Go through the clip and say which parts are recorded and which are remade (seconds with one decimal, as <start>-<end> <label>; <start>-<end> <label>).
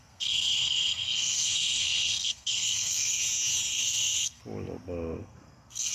0.0-3.2 remade; 3.2-3.7 recorded; 3.7-4.4 remade; 4.4-5.2 recorded; 5.2-5.9 remade